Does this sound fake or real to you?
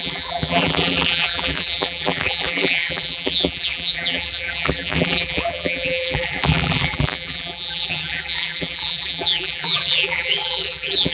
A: fake